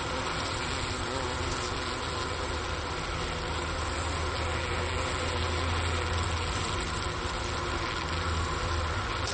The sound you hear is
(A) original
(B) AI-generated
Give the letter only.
A